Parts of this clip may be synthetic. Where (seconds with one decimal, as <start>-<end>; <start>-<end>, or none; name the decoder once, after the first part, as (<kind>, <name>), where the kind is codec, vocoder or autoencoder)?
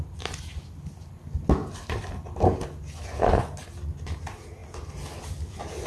none